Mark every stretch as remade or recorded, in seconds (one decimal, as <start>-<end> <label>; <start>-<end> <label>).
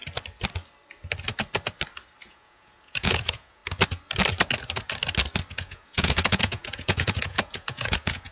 0.0-2.3 recorded; 2.3-3.6 remade; 3.6-5.5 recorded; 5.5-8.3 remade